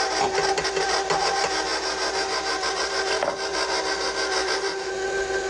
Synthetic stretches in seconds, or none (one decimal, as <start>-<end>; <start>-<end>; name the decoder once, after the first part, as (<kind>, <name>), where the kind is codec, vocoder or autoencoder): none

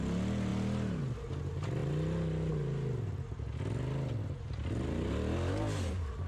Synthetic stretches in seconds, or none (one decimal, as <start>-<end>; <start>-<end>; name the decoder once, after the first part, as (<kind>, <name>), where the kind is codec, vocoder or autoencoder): none

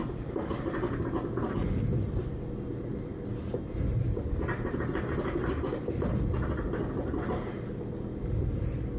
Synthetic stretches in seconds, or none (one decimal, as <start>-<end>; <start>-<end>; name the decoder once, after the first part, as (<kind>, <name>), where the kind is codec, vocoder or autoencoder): none

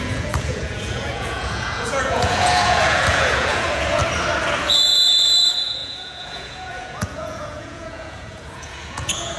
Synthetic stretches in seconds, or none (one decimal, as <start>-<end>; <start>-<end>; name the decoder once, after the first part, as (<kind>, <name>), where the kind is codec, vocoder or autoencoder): 0.0-4.0 (vocoder, Vocos); 4.6-9.4

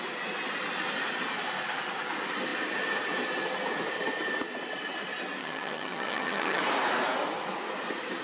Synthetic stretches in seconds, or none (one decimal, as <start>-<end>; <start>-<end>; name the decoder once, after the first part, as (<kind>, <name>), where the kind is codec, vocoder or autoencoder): 5.4-6.6 (vocoder, HiFi-GAN)

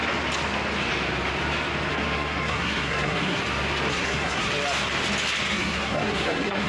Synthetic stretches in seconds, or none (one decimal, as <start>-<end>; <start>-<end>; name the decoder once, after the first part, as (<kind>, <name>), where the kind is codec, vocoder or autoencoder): 1.9-3.4 (codec, SNAC); 3.9-4.5; 5.5-6.7

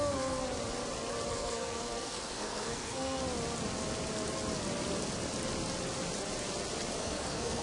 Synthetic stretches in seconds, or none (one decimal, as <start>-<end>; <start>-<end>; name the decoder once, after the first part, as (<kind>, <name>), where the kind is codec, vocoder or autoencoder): 0.0-0.4 (codec, SNAC); 1.3-3.2; 7.0-7.6

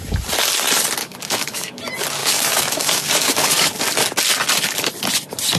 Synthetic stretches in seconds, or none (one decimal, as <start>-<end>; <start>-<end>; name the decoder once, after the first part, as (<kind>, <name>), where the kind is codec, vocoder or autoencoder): 1.0-1.8 (codec, DAC); 2.2-3.9